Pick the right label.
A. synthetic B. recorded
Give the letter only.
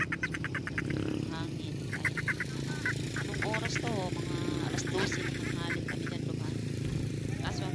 B